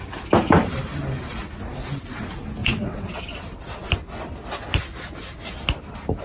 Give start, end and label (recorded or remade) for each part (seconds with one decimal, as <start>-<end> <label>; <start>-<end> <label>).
0.0-2.6 recorded; 2.6-3.2 remade; 3.2-6.2 recorded